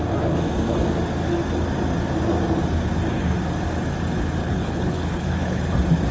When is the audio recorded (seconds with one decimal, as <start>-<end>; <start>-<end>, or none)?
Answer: 0.0-4.4; 5.6-6.1